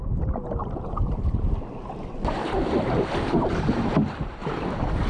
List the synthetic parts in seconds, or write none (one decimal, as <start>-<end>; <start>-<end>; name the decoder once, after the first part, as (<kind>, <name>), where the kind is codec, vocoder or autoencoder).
0.6-3.7 (vocoder, BigVGAN v2)